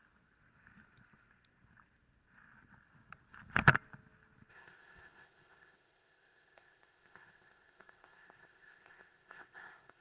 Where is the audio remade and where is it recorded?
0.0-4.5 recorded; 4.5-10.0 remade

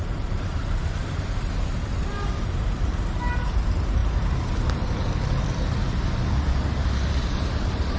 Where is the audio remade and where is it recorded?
0.0-4.0 remade; 4.0-5.7 recorded; 5.7-8.0 remade

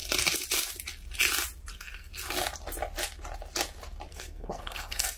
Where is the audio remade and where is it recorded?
0.0-1.7 recorded; 1.7-2.1 remade; 2.1-4.1 recorded; 4.1-5.2 remade

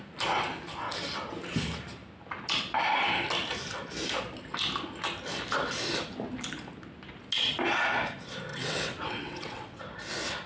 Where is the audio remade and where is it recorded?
0.0-8.5 recorded; 8.5-9.8 remade; 9.8-10.5 recorded

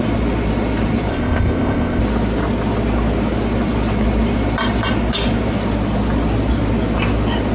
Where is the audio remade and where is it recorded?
0.0-1.1 recorded; 1.1-2.0 remade; 2.0-7.5 recorded

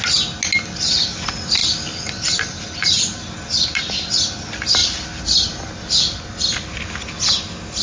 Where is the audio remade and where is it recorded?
0.0-1.6 recorded; 1.6-4.1 remade; 4.1-4.8 recorded; 4.8-6.8 remade; 6.8-7.8 recorded

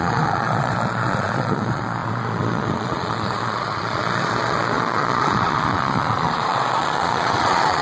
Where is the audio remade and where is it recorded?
0.0-7.8 remade